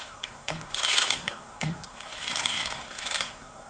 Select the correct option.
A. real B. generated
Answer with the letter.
B